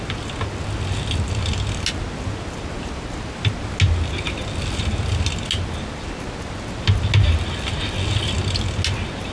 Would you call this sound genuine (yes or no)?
yes